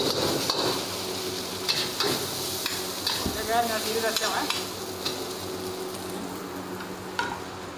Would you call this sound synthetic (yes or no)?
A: no